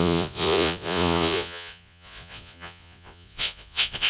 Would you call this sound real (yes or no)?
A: no